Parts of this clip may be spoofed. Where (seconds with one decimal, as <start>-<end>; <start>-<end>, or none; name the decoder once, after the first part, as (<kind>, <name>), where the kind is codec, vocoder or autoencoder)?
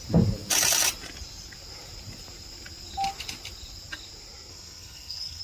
4.5-5.4 (codec, SNAC)